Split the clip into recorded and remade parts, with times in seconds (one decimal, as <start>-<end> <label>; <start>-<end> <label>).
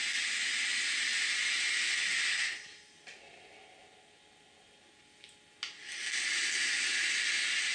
0.0-7.7 recorded